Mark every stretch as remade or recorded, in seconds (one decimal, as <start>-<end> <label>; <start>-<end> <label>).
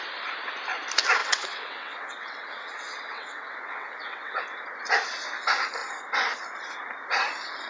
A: 0.0-1.2 recorded; 1.2-4.4 remade; 4.4-7.7 recorded